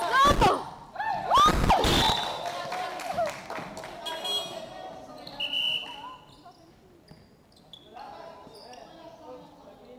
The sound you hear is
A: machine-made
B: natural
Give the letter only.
B